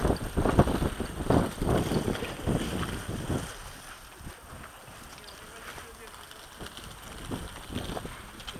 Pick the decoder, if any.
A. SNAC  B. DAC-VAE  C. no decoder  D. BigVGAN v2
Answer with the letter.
C